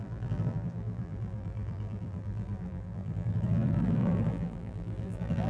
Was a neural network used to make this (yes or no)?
yes